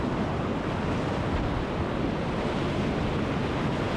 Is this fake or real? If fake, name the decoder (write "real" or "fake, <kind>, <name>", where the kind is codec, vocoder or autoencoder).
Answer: real